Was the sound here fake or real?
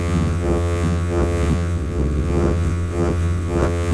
fake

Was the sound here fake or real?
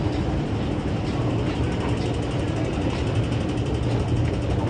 real